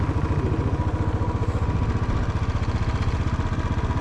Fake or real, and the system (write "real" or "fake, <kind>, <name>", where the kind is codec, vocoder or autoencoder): real